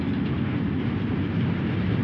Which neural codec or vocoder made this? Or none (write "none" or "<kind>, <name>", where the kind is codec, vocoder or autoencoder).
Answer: none